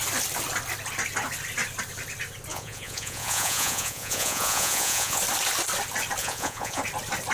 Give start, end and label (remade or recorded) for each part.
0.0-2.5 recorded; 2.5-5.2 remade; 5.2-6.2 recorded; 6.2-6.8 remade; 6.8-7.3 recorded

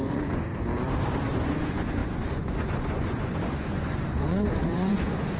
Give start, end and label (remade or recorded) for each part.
0.0-0.5 remade; 0.5-1.4 recorded; 1.4-5.4 remade

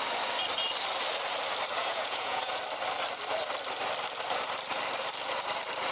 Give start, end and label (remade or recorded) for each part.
0.0-1.8 recorded; 1.8-2.6 remade; 2.6-5.9 recorded

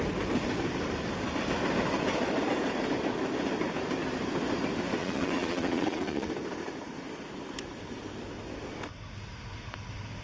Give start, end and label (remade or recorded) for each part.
0.0-5.0 recorded; 5.0-6.3 remade; 6.3-10.2 recorded

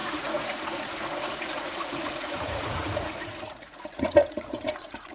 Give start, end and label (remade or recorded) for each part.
0.0-5.1 remade

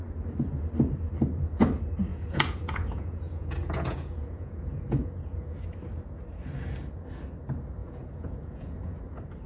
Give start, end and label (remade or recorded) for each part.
0.0-2.1 recorded; 2.1-5.6 remade; 5.6-7.8 recorded; 7.8-9.0 remade; 9.0-9.5 recorded

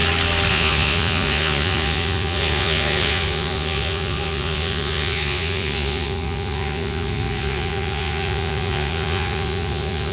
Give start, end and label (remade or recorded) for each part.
0.0-0.5 recorded; 0.5-10.1 remade